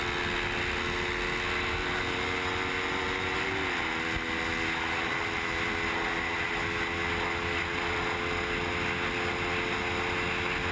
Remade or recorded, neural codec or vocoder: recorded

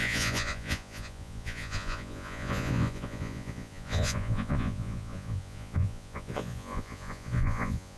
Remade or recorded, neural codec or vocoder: remade, vocoder, Vocos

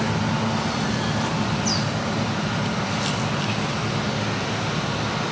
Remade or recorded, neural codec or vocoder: recorded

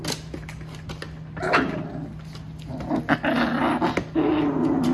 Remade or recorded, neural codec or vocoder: recorded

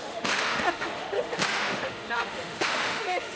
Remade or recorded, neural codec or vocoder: remade, autoencoder, DAC-VAE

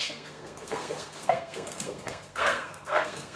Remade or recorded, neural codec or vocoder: remade, codec, SNAC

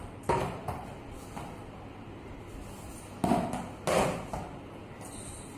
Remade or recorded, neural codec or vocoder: recorded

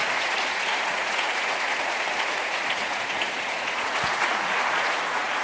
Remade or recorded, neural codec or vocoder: remade, vocoder, Vocos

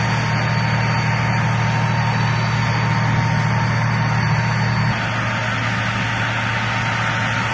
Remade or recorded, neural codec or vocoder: recorded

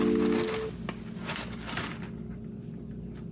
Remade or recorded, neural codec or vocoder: recorded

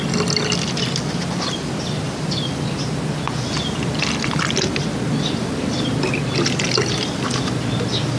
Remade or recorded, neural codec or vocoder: recorded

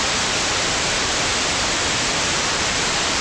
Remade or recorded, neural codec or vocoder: remade, vocoder, BigVGAN v2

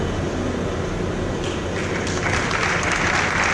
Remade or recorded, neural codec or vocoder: recorded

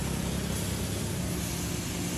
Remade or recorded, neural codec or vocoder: recorded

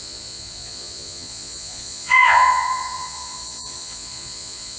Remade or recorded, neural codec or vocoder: remade, vocoder, Vocos